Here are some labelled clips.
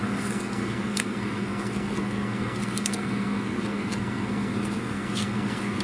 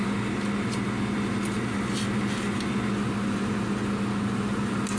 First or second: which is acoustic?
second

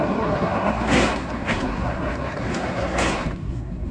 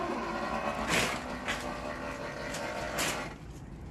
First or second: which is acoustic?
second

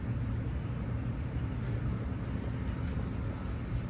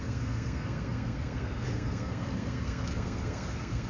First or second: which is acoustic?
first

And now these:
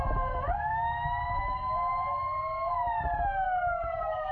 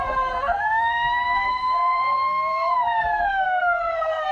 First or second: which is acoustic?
first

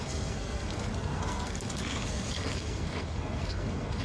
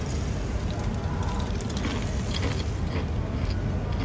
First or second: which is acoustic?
second